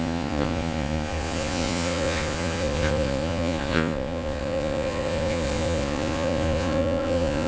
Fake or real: fake